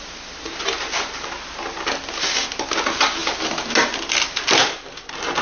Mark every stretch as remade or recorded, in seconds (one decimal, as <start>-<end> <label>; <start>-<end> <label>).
0.0-5.4 recorded